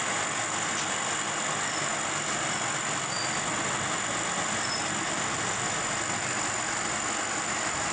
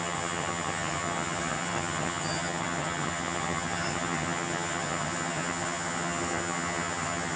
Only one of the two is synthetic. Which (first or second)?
second